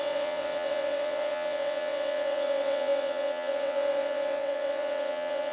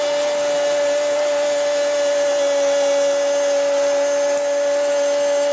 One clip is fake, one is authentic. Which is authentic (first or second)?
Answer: second